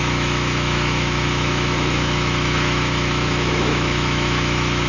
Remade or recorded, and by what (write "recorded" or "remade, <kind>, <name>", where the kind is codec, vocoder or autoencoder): remade, autoencoder, DAC-VAE